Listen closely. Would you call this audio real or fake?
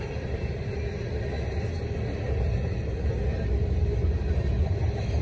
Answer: real